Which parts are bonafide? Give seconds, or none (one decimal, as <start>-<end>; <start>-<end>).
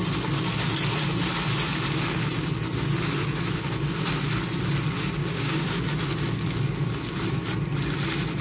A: 0.0-5.2; 5.8-8.4